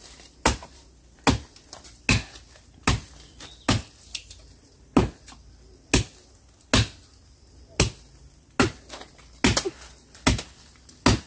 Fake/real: real